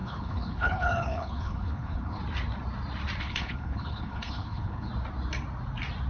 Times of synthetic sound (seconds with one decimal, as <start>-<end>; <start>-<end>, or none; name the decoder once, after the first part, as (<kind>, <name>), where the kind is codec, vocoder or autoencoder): 0.0-2.2 (codec, HILCodec); 3.2-4.9